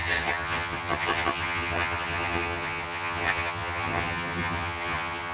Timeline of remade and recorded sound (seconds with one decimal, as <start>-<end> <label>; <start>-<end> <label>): 0.0-5.3 remade